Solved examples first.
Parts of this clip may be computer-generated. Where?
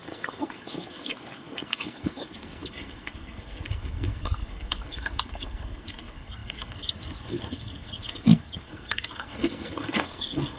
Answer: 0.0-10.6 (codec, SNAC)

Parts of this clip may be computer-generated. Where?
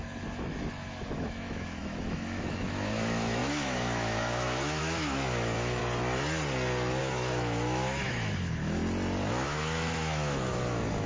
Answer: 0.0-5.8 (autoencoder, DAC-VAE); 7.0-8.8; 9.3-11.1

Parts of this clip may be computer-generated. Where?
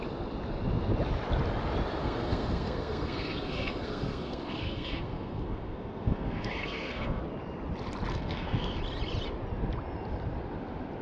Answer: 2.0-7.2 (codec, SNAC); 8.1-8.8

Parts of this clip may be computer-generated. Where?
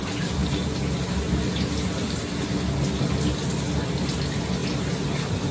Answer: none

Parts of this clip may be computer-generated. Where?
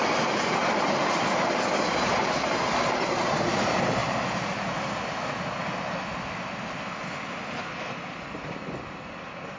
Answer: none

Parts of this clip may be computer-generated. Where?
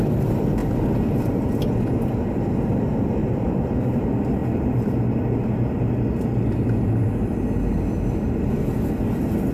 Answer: 3.2-4.0 (vocoder, BigVGAN v2)